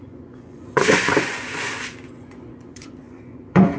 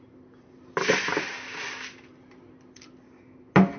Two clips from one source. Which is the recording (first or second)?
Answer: second